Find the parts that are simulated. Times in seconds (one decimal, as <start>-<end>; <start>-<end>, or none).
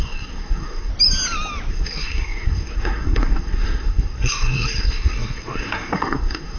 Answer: 0.0-0.9; 1.7-6.6